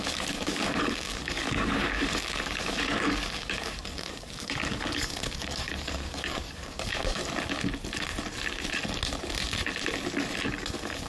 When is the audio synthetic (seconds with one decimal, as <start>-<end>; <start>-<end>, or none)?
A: 0.0-7.2; 10.5-11.1